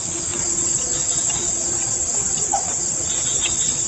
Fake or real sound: fake